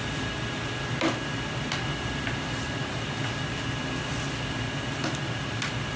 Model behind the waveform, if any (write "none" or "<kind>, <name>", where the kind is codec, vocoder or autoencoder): none